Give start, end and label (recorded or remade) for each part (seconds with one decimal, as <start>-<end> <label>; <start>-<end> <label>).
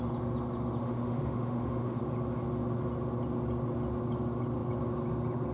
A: 0.0-0.8 recorded; 0.8-2.0 remade; 2.0-5.5 recorded